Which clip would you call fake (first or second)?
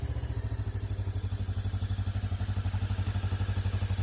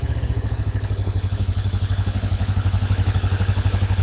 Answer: second